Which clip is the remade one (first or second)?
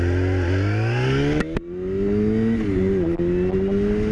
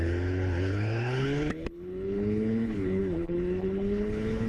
second